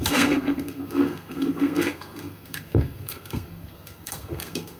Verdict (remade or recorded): remade